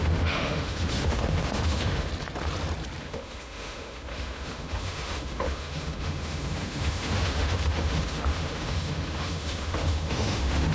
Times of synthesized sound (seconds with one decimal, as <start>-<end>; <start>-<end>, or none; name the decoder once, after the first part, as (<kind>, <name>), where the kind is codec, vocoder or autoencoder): 0.0-2.1 (autoencoder, DAC-VAE); 3.0-10.7